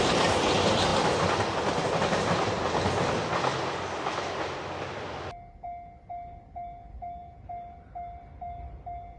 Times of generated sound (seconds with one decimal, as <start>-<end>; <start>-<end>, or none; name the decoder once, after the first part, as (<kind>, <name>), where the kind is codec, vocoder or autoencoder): none

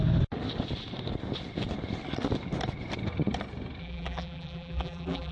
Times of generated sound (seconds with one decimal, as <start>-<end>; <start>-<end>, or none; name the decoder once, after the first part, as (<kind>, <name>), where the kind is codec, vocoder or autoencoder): 3.8-5.3 (vocoder, BigVGAN v2)

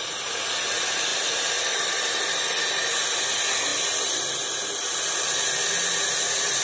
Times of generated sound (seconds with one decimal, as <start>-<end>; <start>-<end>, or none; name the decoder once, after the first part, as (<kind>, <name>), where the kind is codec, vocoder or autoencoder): 1.1-2.2 (vocoder, BigVGAN v2)